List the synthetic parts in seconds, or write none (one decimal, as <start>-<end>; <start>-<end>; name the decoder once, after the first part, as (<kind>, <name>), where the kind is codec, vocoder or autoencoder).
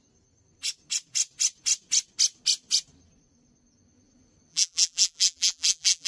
4.5-6.1 (vocoder, BigVGAN v2)